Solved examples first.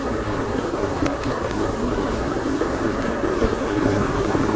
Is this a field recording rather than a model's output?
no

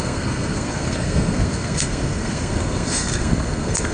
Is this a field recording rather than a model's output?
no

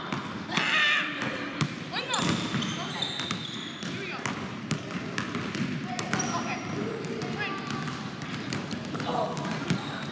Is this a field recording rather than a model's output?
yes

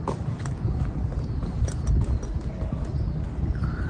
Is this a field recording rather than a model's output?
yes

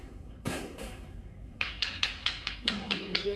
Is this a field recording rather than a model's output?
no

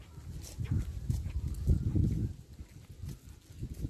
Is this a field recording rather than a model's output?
yes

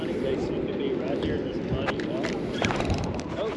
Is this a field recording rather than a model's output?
yes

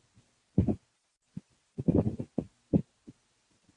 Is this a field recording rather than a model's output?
yes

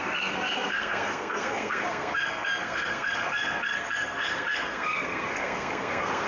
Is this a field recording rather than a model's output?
no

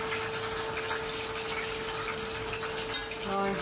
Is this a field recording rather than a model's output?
yes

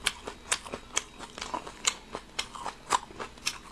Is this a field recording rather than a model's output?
yes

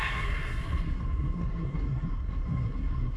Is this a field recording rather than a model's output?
no